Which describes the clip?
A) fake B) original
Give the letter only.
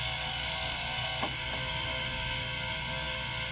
A